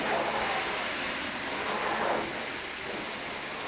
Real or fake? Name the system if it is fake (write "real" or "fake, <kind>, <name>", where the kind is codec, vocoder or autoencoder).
real